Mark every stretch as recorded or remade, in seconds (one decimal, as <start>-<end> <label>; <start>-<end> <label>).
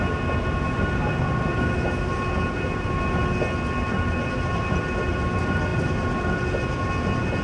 0.0-7.4 recorded